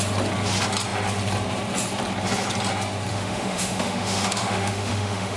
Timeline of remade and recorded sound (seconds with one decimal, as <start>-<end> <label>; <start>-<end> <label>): 0.0-3.1 recorded; 3.1-5.4 remade